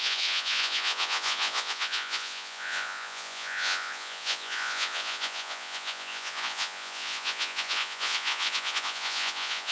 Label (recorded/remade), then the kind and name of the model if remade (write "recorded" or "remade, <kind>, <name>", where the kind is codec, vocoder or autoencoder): remade, vocoder, Vocos